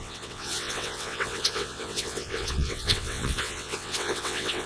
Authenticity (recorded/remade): remade